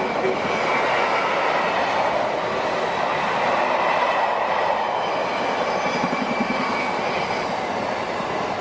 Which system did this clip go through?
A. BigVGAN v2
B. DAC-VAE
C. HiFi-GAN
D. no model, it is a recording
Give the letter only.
D